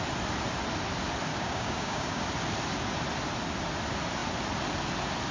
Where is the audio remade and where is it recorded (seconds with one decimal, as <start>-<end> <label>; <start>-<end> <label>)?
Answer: 0.0-1.3 recorded; 1.3-2.2 remade; 2.2-5.3 recorded